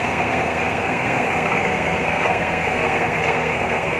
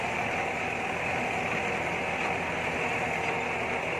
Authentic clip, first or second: second